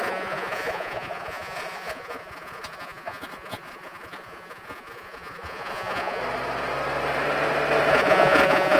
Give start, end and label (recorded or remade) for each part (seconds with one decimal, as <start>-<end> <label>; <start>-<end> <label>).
0.0-6.2 remade; 6.2-7.9 recorded; 7.9-8.8 remade